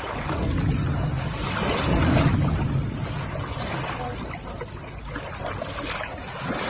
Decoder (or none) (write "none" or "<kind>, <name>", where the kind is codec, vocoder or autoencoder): none